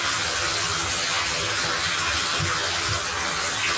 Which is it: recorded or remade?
recorded